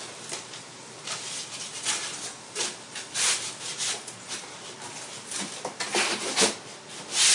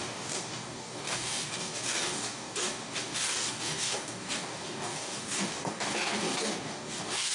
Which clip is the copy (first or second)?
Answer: second